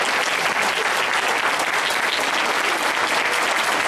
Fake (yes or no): no